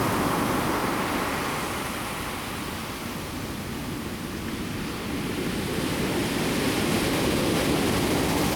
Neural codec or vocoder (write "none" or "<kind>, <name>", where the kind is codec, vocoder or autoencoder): none